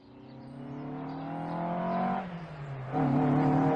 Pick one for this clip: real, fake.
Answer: real